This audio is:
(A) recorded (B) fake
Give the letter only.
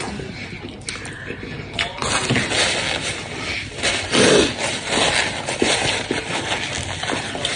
A